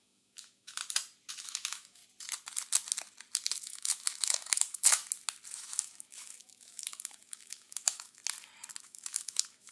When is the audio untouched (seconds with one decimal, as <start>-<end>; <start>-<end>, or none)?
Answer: 0.8-1.4; 2.0-3.6; 5.0-5.5; 8.2-8.8